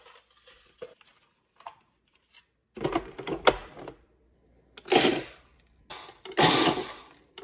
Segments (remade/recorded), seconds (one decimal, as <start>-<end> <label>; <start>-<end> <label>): 0.0-7.4 recorded